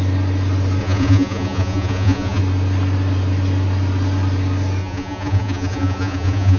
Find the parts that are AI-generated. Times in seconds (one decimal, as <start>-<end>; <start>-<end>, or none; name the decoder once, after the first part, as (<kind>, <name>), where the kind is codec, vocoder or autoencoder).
0.8-2.4 (vocoder, Vocos); 4.8-6.6